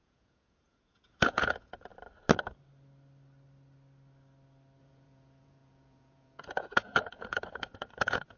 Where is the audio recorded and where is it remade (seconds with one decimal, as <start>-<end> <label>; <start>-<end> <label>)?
0.0-1.9 remade; 1.9-4.8 recorded; 4.8-8.4 remade

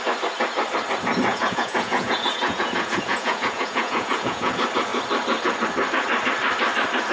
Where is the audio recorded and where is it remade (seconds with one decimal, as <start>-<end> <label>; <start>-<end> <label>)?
0.0-1.3 recorded; 1.3-4.5 remade; 4.5-7.1 recorded

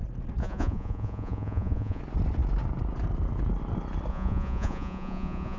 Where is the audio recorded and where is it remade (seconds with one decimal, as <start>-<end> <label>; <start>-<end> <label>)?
0.0-0.4 recorded; 0.4-2.0 remade; 2.0-4.1 recorded; 4.1-5.6 remade

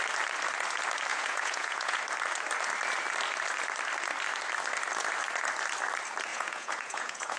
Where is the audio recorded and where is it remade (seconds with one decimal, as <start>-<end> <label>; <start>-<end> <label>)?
0.0-1.1 recorded; 1.1-2.0 remade; 2.0-6.3 recorded; 6.3-7.4 remade

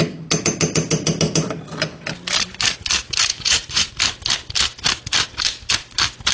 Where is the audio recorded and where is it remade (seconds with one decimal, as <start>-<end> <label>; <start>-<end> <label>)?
0.0-3.3 recorded; 3.3-3.9 remade; 3.9-6.3 recorded

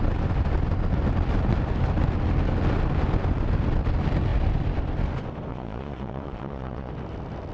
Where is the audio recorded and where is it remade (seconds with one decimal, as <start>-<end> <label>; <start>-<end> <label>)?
0.0-5.5 recorded; 5.5-6.9 remade; 6.9-7.5 recorded